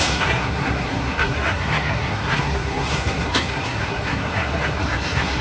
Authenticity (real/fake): fake